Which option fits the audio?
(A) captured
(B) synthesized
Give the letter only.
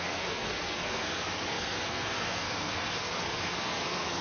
B